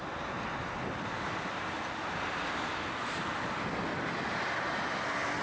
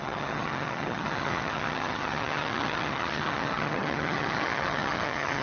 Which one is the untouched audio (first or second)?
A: first